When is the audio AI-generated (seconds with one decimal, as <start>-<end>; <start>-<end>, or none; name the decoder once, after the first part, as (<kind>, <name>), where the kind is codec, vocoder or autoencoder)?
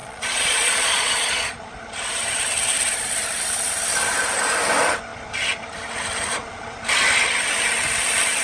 0.0-1.5 (vocoder, Vocos)